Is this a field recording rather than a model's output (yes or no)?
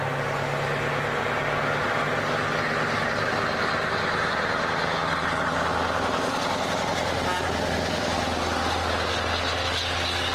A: yes